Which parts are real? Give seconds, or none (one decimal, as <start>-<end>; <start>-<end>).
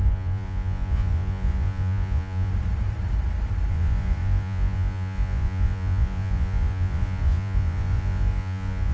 2.5-3.7